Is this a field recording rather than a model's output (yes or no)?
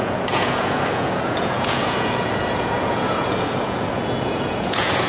no